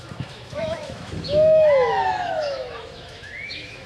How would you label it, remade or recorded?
remade